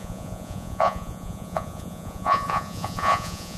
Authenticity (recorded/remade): remade